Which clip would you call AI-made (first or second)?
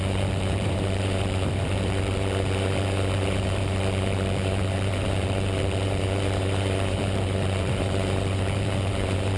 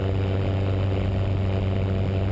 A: first